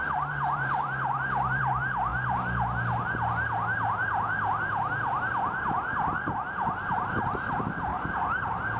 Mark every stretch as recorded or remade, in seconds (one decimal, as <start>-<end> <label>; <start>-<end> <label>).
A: 0.0-2.1 remade; 2.1-7.1 recorded; 7.1-7.9 remade; 7.9-8.4 recorded; 8.4-8.8 remade